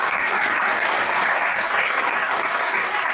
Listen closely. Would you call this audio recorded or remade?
remade